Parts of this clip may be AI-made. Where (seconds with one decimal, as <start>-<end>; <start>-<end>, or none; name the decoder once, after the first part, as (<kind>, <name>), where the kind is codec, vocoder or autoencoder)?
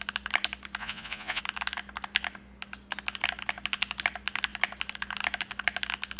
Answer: 0.8-1.4 (vocoder, Vocos)